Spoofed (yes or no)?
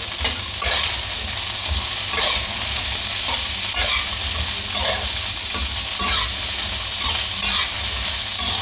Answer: no